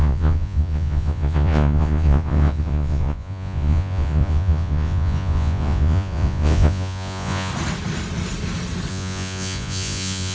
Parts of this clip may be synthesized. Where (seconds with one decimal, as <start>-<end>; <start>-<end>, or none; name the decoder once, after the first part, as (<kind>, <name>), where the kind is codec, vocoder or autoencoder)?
0.0-7.5 (vocoder, Vocos); 8.9-10.3